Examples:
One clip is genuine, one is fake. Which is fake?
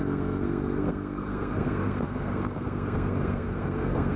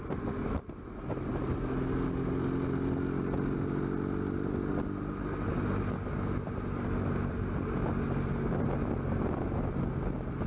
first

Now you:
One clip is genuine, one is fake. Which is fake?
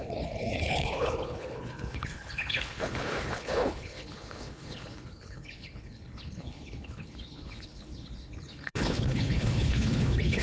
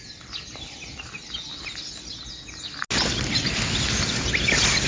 first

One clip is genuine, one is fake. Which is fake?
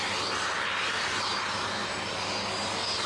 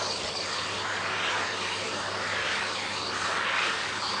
second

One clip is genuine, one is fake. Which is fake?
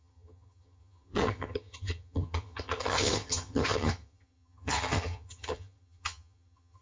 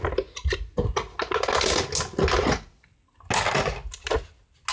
first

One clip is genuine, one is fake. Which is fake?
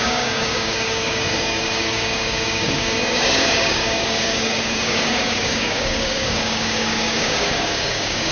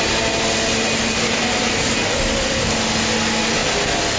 first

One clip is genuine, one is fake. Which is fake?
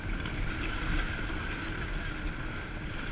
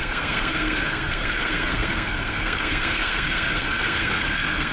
second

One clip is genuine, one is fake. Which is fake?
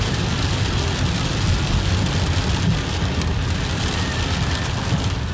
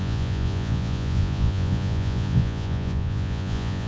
second